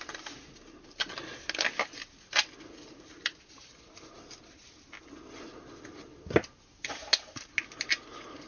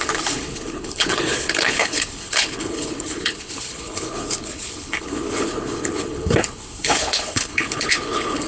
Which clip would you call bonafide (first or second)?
first